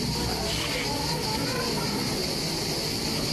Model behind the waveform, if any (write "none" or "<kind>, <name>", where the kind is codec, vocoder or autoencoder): none